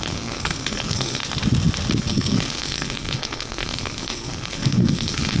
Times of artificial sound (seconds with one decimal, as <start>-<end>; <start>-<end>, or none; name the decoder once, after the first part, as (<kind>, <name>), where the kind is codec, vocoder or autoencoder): 0.0-1.2 (codec, SNAC); 2.0-5.4